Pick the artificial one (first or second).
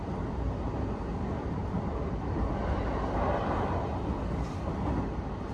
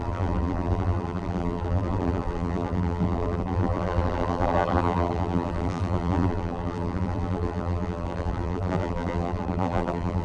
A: second